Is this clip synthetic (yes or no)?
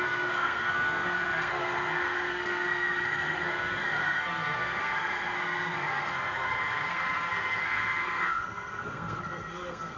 yes